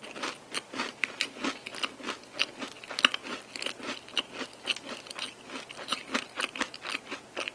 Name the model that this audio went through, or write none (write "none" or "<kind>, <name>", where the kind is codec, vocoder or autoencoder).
none